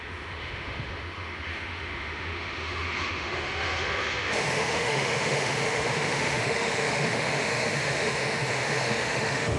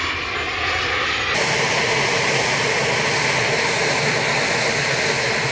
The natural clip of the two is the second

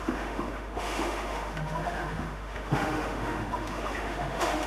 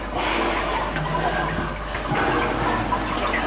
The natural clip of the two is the second